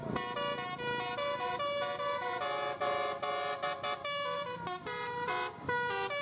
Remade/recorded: recorded